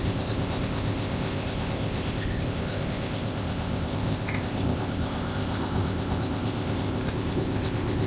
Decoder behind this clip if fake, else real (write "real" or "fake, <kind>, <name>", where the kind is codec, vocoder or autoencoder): fake, codec, ZipCodec